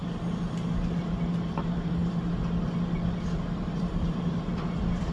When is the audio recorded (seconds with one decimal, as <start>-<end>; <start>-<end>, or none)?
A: 0.0-5.1